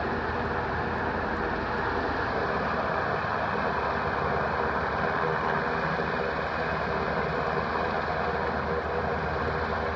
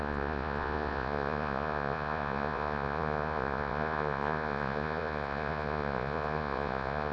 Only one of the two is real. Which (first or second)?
first